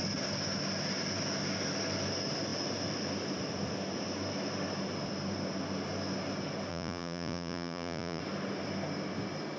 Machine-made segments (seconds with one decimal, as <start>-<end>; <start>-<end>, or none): 6.7-8.2